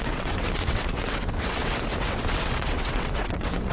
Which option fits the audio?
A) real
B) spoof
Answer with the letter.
B